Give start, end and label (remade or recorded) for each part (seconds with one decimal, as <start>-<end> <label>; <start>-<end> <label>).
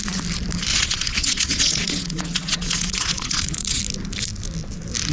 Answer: 0.0-0.7 recorded; 0.7-3.8 remade; 3.8-5.1 recorded